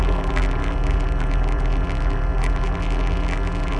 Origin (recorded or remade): remade